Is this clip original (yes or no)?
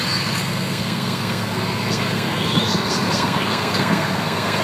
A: no